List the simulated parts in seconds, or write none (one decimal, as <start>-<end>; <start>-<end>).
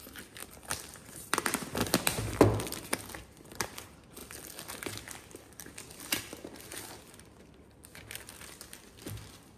none